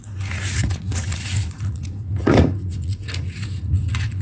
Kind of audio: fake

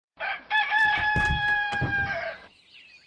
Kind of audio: fake